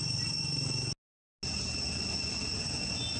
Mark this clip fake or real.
real